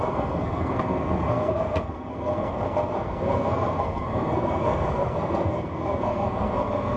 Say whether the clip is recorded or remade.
remade